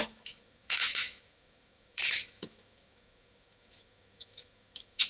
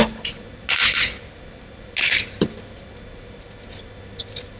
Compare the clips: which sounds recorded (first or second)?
second